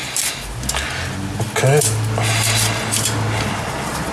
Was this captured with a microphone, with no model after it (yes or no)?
yes